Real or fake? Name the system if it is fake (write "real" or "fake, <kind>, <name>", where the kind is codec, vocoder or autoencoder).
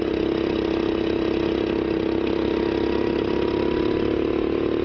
real